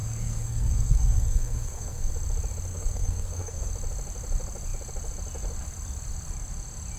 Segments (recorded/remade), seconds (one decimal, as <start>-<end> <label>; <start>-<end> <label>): 0.0-2.1 remade; 2.1-2.7 recorded; 2.7-3.7 remade; 3.7-7.0 recorded